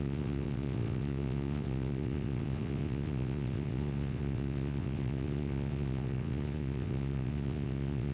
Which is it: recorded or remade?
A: remade